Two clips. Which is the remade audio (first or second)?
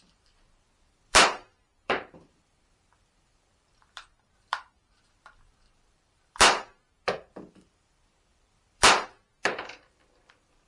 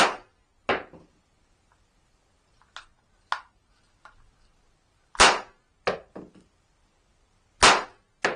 first